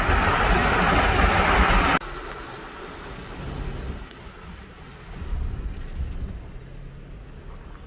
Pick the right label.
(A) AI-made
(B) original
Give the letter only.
B